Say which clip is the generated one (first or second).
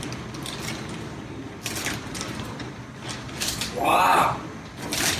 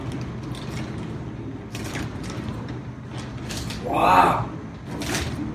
first